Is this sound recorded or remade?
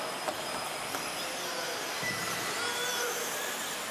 recorded